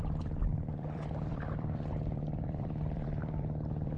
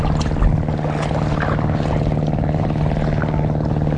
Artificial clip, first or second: first